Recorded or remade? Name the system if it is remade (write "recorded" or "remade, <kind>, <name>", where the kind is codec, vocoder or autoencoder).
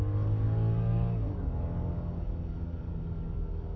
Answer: remade, codec, DAC